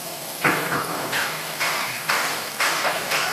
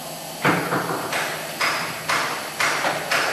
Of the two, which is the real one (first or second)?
second